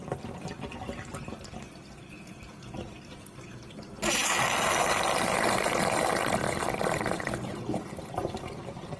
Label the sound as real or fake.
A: real